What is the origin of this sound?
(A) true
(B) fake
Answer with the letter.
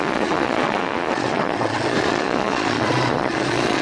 B